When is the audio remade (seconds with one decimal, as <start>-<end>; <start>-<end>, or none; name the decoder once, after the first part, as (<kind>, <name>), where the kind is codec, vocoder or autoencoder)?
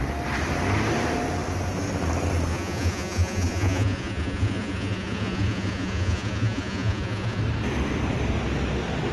2.5-7.4 (vocoder, Vocos)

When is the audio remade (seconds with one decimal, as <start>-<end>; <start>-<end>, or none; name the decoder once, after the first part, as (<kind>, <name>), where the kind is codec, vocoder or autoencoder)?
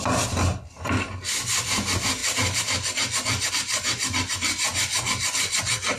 none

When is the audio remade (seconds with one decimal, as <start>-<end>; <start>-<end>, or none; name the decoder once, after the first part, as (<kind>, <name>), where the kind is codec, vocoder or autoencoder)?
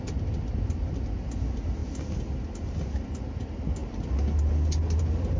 none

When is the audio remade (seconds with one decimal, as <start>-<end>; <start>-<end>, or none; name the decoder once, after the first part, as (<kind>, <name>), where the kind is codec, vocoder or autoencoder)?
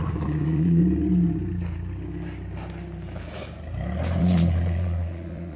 0.0-0.8 (vocoder, Vocos); 4.2-5.6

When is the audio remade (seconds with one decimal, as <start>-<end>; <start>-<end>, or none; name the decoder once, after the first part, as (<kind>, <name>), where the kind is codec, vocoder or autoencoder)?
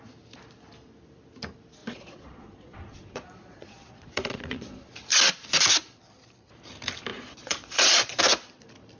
1.8-4.8 (vocoder, Vocos); 7.1-8.2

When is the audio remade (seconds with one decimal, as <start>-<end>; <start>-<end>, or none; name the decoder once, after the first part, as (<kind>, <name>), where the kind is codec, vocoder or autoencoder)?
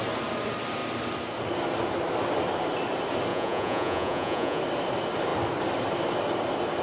3.3-4.6 (vocoder, Vocos)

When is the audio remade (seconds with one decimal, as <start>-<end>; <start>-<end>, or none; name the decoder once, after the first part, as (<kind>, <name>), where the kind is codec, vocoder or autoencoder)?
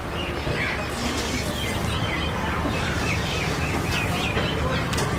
0.0-0.6 (vocoder, Vocos)